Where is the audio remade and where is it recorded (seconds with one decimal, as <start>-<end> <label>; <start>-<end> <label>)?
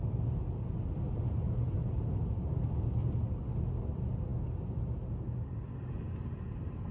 0.0-6.9 recorded